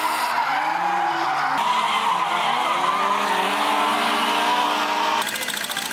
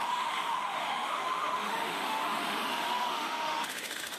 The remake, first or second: second